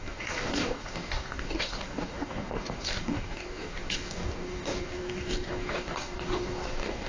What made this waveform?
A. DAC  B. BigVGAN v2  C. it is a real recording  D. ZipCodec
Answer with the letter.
A